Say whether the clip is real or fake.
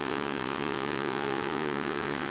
fake